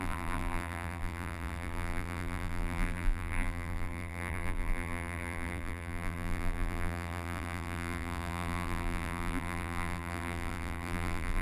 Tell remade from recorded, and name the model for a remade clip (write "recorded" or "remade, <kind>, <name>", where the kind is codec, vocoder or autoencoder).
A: remade, vocoder, BigVGAN v2